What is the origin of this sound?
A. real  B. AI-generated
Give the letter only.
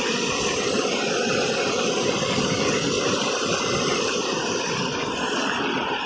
A